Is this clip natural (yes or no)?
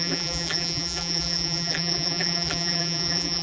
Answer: no